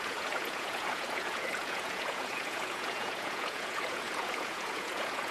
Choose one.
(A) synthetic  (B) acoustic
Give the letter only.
A